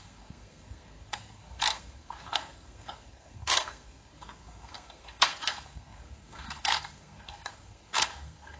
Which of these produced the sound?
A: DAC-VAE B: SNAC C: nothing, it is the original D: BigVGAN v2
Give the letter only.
B